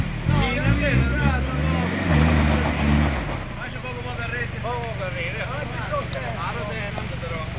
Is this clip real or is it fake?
real